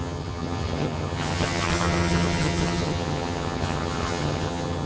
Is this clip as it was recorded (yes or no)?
no